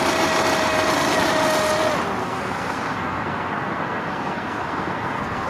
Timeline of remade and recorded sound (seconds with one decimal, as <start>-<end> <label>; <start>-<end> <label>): 0.0-2.2 recorded; 2.2-5.5 remade